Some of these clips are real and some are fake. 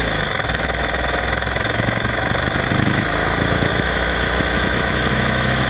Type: fake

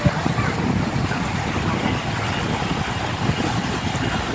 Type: real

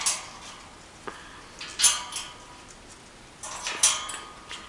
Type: real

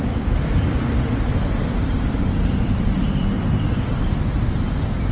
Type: fake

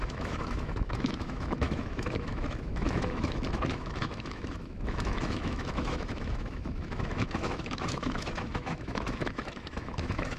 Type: fake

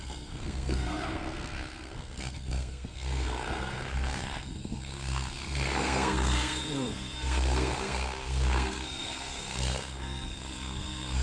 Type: fake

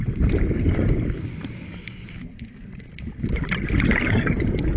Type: real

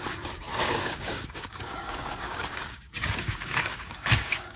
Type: fake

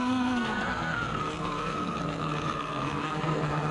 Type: fake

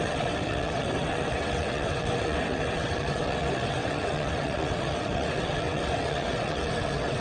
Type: fake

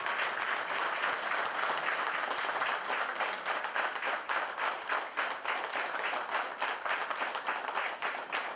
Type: real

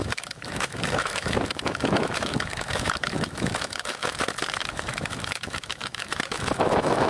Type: fake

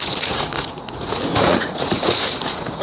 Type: fake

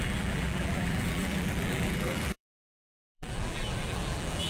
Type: fake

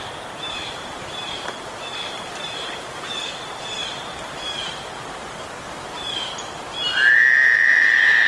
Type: fake